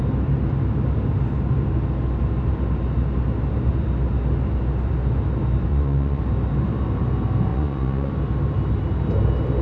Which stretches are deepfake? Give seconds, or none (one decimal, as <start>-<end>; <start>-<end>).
5.7-6.2; 7.5-8.1